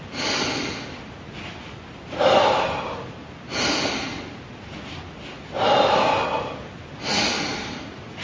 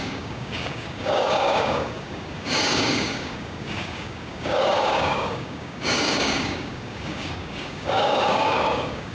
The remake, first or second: second